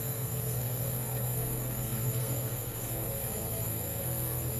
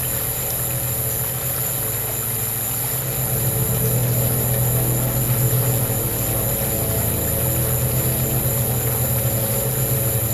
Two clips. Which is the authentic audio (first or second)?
second